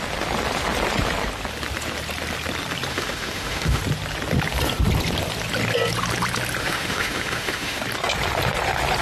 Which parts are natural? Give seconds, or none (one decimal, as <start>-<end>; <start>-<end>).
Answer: 0.0-2.9; 3.8-6.6; 7.8-9.0